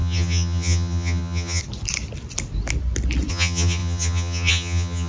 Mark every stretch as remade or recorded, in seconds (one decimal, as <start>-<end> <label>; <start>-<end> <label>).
0.0-1.6 remade; 1.6-3.3 recorded; 3.3-5.1 remade